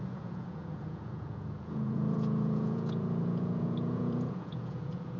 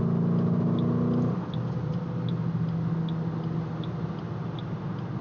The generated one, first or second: first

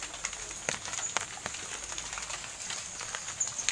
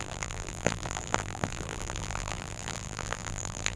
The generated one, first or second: second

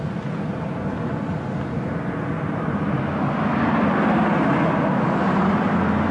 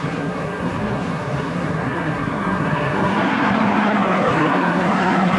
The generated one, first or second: second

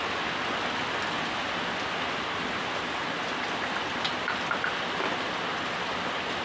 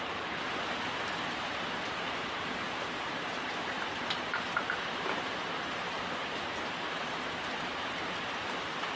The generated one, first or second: second